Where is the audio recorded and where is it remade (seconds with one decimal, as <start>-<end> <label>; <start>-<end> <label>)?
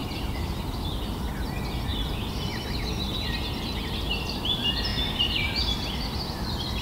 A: 0.0-1.3 remade; 1.3-4.9 recorded; 4.9-5.6 remade; 5.6-6.8 recorded